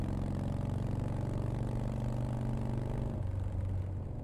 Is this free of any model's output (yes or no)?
yes